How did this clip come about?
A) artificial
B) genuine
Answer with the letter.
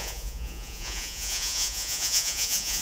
A